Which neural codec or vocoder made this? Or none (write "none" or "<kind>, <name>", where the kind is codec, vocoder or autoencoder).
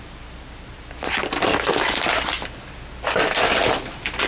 none